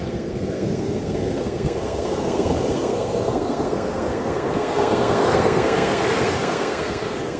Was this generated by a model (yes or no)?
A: yes